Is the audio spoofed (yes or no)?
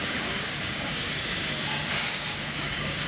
yes